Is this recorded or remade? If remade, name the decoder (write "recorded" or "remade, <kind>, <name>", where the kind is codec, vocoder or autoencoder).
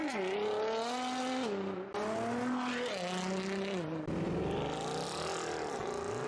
recorded